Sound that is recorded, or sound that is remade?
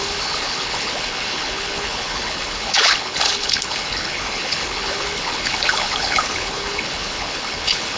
remade